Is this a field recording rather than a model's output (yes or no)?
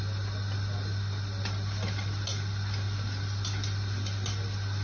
yes